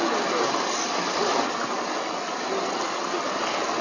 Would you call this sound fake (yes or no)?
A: no